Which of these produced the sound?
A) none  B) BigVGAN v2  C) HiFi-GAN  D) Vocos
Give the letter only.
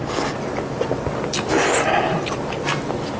A